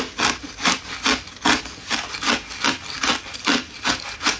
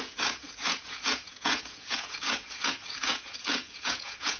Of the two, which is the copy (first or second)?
second